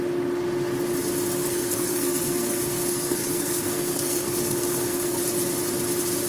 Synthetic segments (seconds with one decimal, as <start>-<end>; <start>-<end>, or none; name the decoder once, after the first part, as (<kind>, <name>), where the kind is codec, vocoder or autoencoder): 1.4-5.2 (codec, SNAC)